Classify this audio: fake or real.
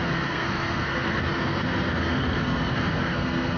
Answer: fake